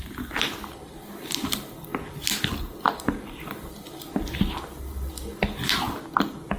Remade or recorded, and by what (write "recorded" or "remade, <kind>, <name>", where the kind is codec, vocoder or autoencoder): recorded